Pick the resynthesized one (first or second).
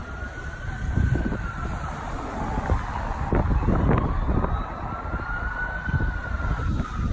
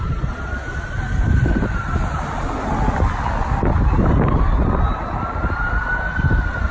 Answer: first